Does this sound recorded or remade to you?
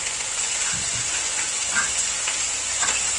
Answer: remade